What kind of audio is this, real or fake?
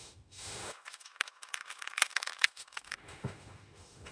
fake